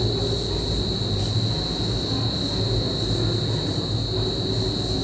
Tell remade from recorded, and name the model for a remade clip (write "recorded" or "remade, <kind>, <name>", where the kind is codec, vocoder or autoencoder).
recorded